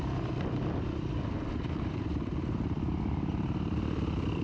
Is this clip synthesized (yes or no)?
yes